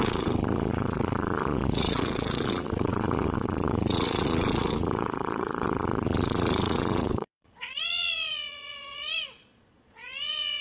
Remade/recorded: remade